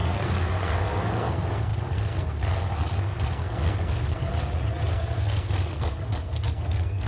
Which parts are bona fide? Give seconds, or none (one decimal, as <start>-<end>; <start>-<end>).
4.3-4.9